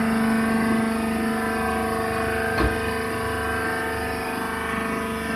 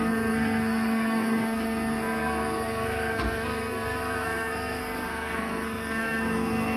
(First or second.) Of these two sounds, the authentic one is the first